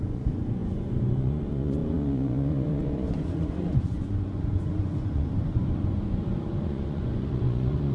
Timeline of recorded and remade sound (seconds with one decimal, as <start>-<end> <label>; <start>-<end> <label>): 0.0-7.9 remade